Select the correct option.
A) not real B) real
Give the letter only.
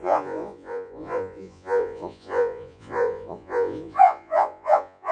A